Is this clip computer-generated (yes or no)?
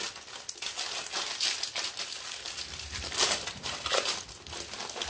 no